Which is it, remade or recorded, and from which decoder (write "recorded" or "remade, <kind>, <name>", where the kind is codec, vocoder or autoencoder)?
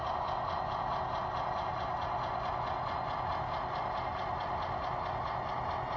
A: recorded